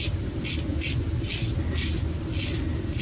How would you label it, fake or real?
real